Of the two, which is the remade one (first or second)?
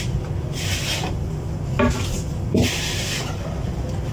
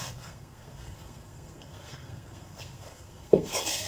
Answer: second